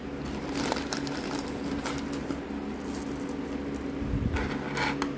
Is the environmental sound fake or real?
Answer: real